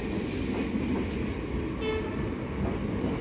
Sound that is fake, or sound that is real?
real